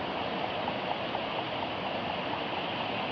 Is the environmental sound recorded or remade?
recorded